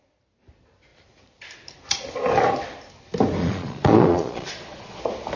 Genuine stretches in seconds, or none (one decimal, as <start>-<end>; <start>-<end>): 0.0-3.4; 5.0-5.4